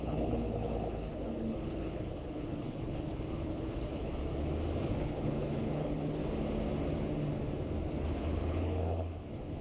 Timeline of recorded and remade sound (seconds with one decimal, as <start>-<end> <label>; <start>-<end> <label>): 0.0-4.1 remade; 4.1-4.8 recorded; 4.8-6.2 remade; 6.2-7.9 recorded; 7.9-9.6 remade